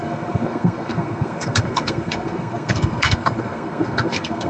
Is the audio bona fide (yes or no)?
no